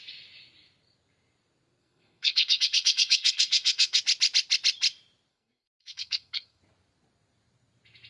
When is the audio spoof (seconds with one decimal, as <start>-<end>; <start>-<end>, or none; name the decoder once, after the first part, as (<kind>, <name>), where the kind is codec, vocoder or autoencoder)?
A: 1.8-4.0 (codec, SNAC); 5.3-6.6